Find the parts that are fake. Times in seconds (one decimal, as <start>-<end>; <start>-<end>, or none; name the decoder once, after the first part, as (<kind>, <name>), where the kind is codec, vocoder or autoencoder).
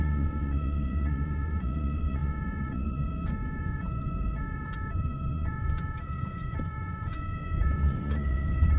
0.0-8.8 (vocoder, Vocos)